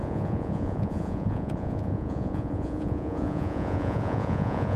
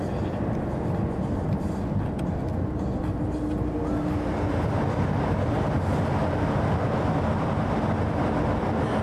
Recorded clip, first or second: second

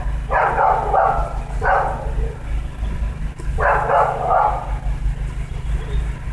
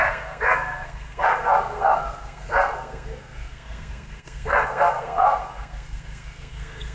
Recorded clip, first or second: first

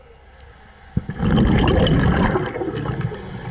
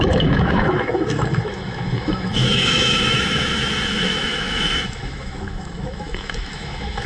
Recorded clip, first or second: first